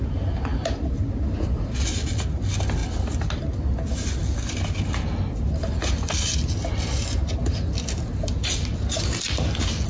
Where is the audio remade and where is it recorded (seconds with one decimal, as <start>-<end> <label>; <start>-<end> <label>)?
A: 0.0-9.9 recorded